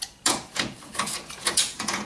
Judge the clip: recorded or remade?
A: remade